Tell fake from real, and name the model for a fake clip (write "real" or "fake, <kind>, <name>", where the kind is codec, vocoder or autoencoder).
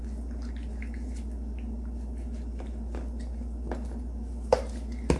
real